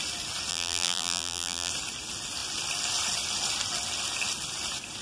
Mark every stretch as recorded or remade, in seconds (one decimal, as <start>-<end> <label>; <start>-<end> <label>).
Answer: 0.0-0.5 recorded; 0.5-1.7 remade; 1.7-5.0 recorded